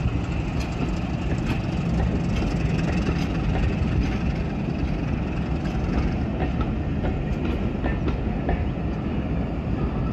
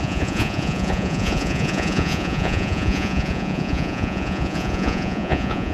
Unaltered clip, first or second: first